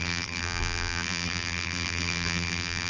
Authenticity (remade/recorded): remade